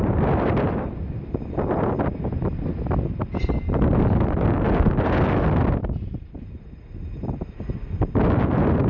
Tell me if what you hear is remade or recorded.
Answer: recorded